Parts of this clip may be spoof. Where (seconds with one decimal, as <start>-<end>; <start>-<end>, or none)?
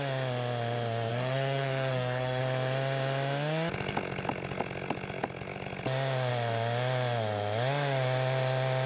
1.1-2.4